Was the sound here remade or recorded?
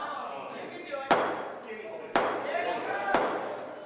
recorded